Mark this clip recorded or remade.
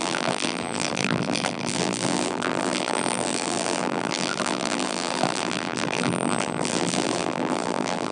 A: remade